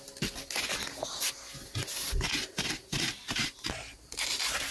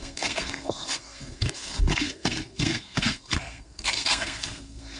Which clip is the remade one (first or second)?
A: second